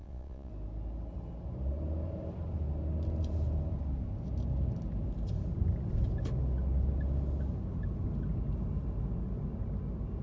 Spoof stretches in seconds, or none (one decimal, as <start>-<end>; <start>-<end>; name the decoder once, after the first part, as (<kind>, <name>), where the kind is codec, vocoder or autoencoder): 0.0-0.5 (vocoder, Vocos)